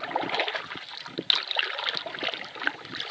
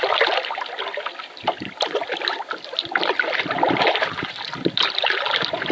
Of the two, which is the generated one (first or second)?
second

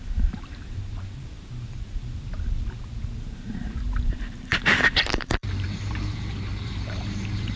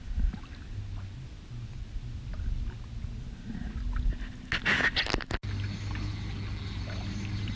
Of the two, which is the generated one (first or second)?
first